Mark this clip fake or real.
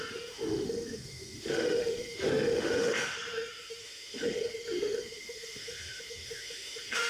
fake